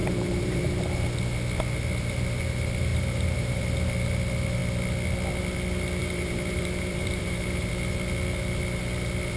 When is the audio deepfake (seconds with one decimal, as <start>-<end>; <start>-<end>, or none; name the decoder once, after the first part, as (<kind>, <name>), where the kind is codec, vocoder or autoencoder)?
0.0-0.7 (vocoder, BigVGAN v2); 2.9-3.6; 6.0-7.7